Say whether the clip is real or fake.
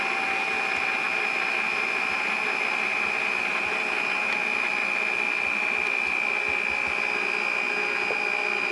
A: real